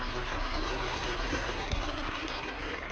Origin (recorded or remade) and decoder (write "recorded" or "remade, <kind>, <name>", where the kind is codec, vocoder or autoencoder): remade, codec, SNAC